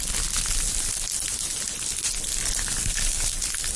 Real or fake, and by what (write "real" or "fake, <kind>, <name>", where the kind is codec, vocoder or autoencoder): real